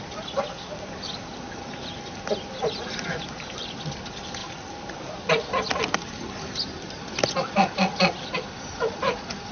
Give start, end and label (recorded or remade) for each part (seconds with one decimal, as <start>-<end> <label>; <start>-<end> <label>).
0.0-9.5 recorded